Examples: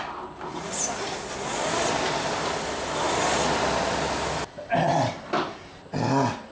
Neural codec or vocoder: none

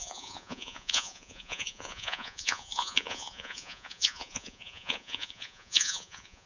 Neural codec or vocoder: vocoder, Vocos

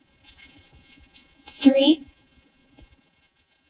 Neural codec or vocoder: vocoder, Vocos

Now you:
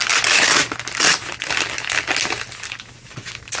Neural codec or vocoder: none